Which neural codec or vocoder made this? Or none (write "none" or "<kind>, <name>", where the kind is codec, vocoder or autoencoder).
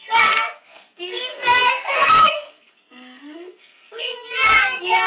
codec, SNAC